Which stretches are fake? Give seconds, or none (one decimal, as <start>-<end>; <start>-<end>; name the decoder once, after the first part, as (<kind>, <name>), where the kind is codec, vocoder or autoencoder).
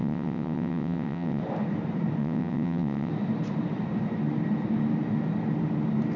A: 0.0-1.4 (vocoder, WaveNeXt); 2.2-3.1